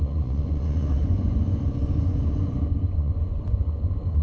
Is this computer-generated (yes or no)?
yes